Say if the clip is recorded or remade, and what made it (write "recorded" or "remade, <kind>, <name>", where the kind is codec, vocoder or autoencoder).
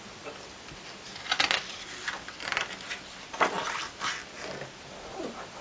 recorded